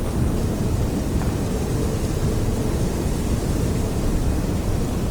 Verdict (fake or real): fake